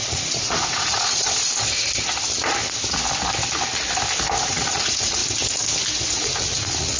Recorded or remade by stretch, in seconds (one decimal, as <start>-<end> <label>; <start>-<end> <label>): 0.0-1.3 remade; 1.3-4.5 recorded; 4.5-5.2 remade; 5.2-6.1 recorded; 6.1-7.0 remade